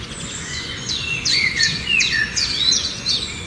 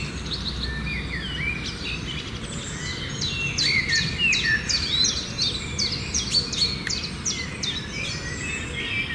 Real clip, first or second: second